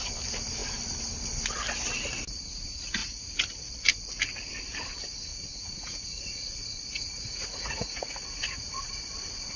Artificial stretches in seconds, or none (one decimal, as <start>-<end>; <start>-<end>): 3.0-3.7; 5.3-8.9